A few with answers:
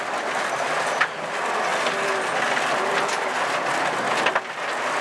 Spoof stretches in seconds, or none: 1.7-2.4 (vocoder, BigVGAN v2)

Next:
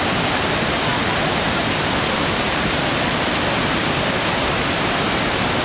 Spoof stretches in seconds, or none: 0.9-2.8 (vocoder, BigVGAN v2)

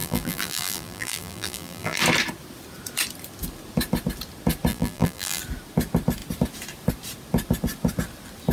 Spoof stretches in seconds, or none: 0.0-2.0 (vocoder, BigVGAN v2); 4.7-5.4

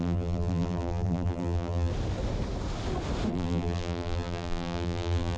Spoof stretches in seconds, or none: 0.0-1.9 (vocoder, BigVGAN v2); 3.3-5.4